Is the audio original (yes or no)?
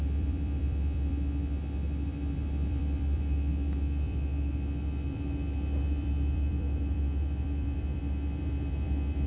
no